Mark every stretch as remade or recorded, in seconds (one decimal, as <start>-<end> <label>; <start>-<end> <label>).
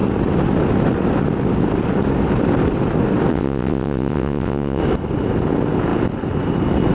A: 0.0-3.3 recorded; 3.3-4.8 remade; 4.8-6.9 recorded